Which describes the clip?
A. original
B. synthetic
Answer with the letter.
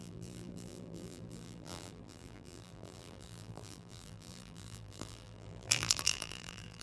B